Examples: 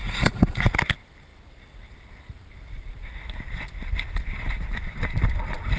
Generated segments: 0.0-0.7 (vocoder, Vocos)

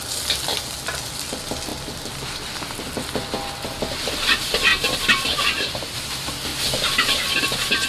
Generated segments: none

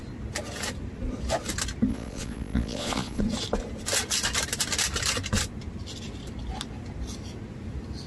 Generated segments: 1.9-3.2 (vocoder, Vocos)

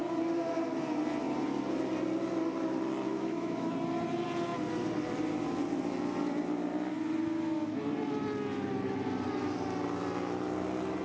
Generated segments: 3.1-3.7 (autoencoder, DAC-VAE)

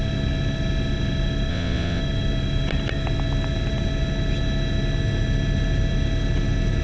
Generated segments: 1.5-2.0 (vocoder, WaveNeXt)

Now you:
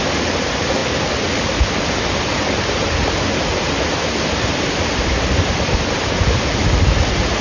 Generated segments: none